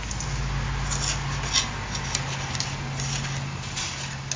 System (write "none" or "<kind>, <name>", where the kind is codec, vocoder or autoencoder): none